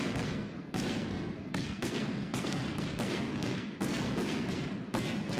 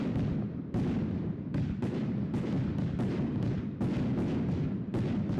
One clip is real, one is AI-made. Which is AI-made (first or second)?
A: first